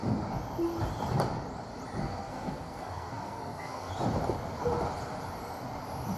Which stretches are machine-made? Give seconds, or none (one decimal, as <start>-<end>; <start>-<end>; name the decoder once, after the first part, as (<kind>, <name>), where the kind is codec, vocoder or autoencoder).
2.0-3.9 (codec, SNAC)